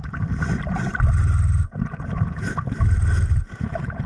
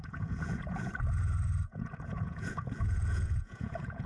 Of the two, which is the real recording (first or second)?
first